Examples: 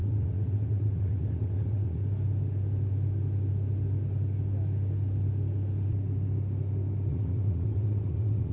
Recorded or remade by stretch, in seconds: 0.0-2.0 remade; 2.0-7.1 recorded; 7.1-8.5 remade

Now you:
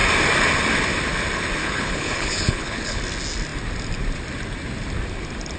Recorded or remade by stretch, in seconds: 0.0-1.6 recorded; 1.6-3.0 remade; 3.0-5.6 recorded